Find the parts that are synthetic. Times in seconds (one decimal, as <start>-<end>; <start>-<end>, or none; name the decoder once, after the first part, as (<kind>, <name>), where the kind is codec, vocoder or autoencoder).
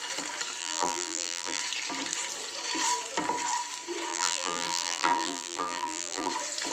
0.6-1.6 (vocoder, BigVGAN v2); 4.1-6.3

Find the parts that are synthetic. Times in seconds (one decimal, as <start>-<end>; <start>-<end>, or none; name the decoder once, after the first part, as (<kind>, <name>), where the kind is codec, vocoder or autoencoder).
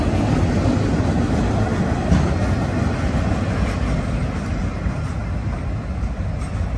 none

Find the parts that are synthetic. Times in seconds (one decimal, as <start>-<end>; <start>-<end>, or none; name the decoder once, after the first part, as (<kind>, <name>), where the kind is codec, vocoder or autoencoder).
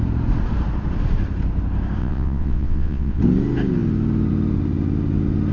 2.0-3.2 (vocoder, WaveNeXt)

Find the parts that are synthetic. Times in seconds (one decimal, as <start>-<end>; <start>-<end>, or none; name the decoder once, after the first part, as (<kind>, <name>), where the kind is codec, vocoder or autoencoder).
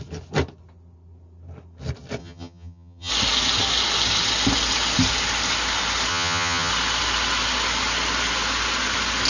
2.2-3.1 (vocoder, HiFi-GAN); 6.1-6.7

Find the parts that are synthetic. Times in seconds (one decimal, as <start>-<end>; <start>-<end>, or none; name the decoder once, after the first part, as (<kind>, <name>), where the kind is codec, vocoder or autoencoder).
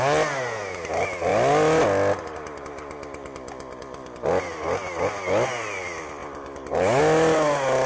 none